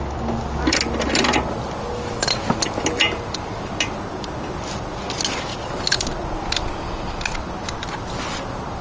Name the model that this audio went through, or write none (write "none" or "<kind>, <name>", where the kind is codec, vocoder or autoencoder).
none